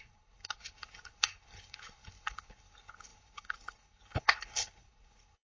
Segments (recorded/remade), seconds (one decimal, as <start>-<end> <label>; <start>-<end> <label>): 0.0-5.4 remade